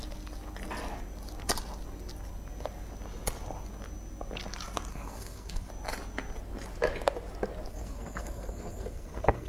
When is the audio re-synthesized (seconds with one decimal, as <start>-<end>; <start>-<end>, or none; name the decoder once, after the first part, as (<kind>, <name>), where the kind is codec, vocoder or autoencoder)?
4.9-5.7 (codec, SNAC); 7.7-9.5